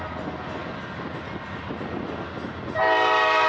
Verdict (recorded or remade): recorded